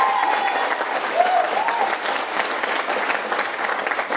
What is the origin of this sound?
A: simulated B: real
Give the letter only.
B